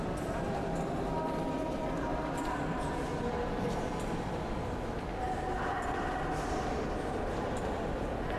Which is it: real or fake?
real